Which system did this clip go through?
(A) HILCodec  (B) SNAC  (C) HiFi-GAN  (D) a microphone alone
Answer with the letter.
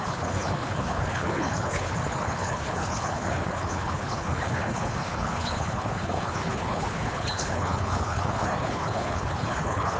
A